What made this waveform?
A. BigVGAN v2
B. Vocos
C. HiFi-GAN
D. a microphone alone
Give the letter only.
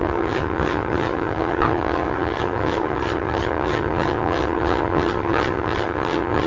C